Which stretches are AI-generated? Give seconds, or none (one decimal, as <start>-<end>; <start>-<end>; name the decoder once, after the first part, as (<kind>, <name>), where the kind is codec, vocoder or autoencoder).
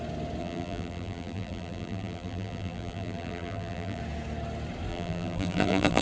0.4-4.0 (vocoder, BigVGAN v2); 4.9-6.0